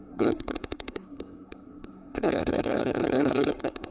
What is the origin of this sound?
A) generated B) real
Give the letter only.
A